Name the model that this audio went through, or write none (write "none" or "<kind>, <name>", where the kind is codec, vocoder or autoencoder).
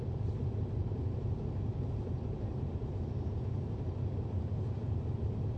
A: none